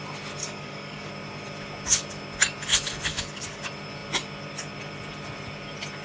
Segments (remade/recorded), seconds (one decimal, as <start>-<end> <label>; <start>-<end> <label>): 0.0-0.4 recorded; 0.4-1.1 remade; 1.1-3.1 recorded; 3.1-3.6 remade; 3.6-6.0 recorded